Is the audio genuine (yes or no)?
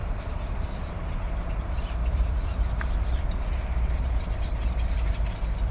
no